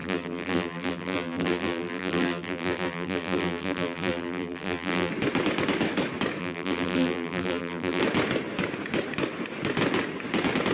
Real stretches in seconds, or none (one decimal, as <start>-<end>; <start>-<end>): 5.1-6.4; 8.0-10.7